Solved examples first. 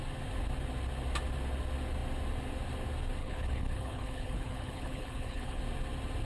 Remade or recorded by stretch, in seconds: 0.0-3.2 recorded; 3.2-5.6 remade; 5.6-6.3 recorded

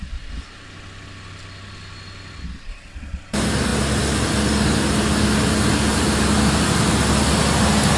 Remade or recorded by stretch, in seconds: 0.0-8.0 recorded

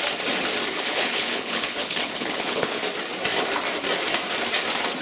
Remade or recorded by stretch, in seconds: 0.0-0.7 recorded; 0.7-2.8 remade; 2.8-5.0 recorded

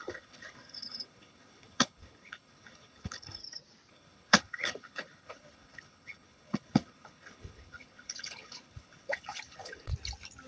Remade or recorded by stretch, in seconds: 0.0-3.4 remade; 3.4-3.9 recorded; 3.9-9.9 remade; 9.9-10.5 recorded

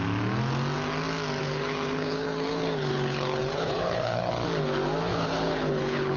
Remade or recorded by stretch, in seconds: 0.0-1.4 recorded; 1.4-4.3 remade; 4.3-5.1 recorded; 5.1-6.2 remade